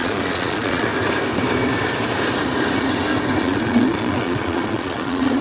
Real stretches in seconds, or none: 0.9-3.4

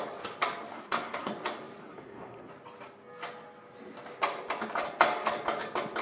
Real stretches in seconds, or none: 0.0-0.7; 1.3-1.8; 2.5-6.0

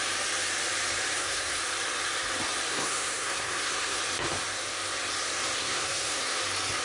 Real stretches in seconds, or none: 0.0-1.1; 1.6-2.7; 4.0-5.6; 6.2-6.8

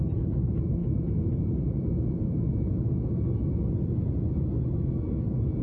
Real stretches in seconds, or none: 0.0-5.6

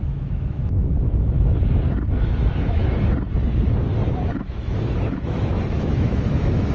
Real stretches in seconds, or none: 0.8-2.1; 2.8-4.3